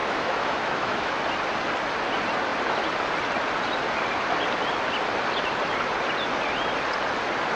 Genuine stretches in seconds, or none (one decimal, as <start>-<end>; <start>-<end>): 1.2-7.6